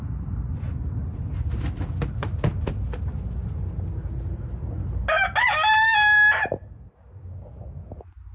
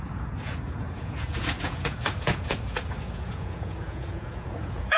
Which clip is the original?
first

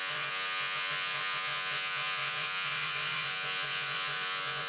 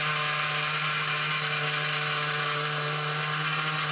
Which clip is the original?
second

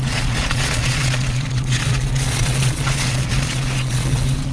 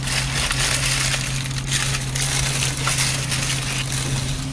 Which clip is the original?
second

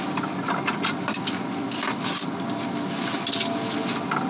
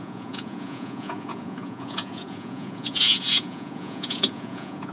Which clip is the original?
first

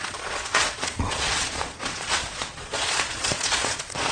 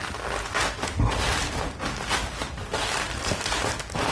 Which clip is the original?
second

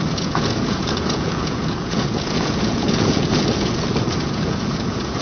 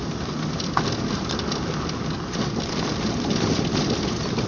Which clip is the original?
second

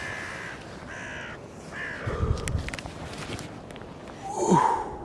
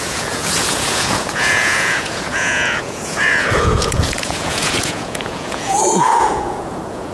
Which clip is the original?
first